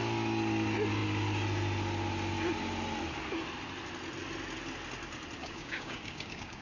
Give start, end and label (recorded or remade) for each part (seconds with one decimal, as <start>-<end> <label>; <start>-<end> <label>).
0.0-5.4 recorded; 5.4-6.6 remade